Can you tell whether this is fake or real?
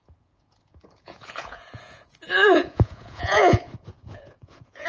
fake